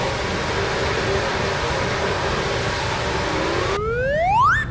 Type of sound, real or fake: real